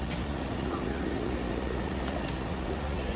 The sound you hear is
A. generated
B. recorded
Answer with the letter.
A